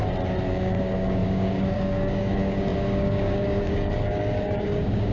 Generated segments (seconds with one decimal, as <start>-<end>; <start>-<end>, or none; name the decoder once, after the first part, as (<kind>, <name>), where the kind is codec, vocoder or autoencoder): 0.5-5.1 (codec, DAC)